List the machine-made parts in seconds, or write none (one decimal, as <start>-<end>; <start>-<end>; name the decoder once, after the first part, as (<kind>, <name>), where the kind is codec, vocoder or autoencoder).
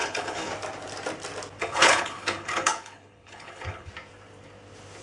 0.0-0.5 (codec, HILCodec); 1.6-3.9